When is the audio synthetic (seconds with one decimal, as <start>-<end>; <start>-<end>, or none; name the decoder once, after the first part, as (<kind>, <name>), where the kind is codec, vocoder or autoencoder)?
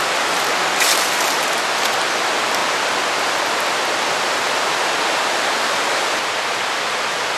none